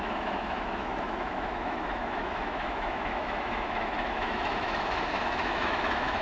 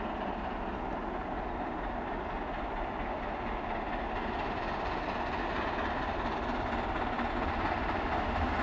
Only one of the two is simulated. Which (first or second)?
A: first